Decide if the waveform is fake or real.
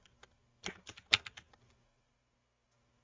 real